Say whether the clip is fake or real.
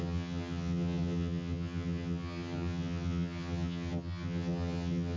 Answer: fake